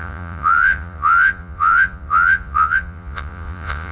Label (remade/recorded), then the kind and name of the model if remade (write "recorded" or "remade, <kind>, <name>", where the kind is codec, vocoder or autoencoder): remade, vocoder, Vocos